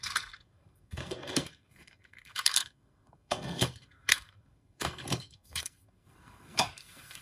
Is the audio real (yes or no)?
no